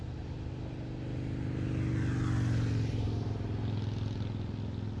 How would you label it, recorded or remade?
recorded